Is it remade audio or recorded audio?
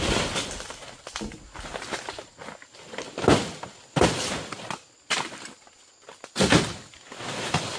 recorded